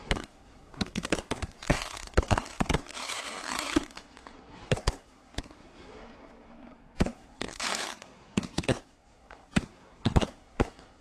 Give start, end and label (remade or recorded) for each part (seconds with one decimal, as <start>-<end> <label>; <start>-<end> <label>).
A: 0.0-11.0 remade